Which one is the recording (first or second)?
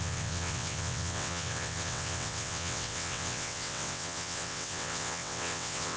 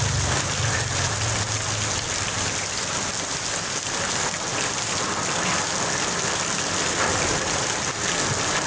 second